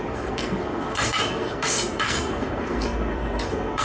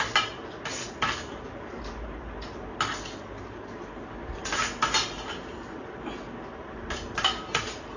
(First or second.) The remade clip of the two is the first